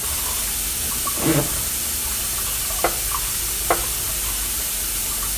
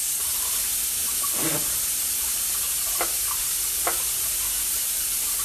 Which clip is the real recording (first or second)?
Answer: first